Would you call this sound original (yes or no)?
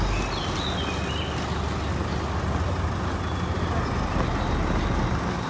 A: yes